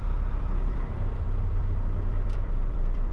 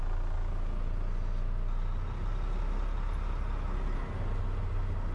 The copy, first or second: first